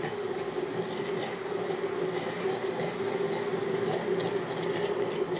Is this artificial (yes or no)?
no